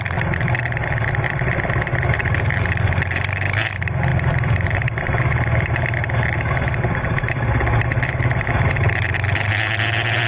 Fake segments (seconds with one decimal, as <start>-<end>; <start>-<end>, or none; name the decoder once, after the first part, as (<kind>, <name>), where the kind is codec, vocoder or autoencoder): 4.1-5.7 (vocoder, BigVGAN v2)